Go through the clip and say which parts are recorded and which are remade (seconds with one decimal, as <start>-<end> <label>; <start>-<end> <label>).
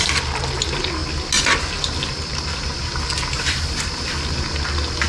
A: 0.0-5.1 recorded